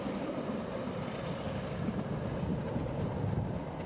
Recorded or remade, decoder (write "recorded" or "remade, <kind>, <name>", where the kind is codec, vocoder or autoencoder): recorded